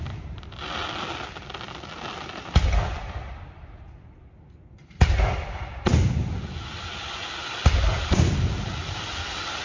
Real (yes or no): yes